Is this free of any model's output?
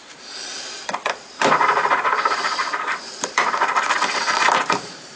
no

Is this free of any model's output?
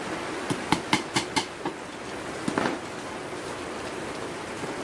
yes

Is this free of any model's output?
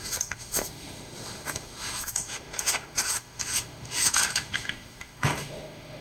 no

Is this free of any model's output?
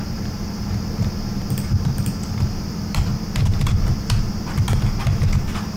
no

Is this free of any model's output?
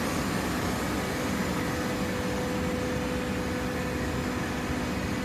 yes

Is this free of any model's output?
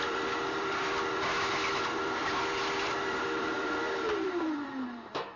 no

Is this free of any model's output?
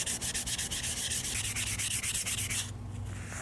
yes